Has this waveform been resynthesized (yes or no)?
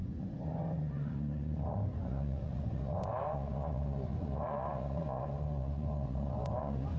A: yes